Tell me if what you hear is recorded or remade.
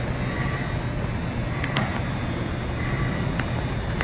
recorded